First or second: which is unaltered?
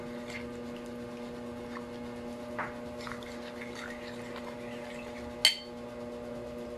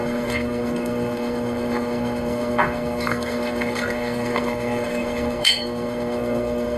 first